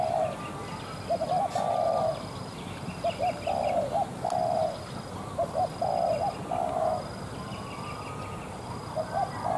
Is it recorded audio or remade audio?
recorded